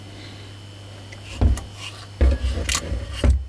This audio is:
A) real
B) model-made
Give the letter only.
A